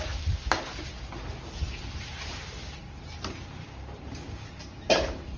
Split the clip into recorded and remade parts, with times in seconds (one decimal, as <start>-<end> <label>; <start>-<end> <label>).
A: 0.0-5.4 recorded